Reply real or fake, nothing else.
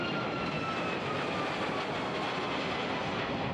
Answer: real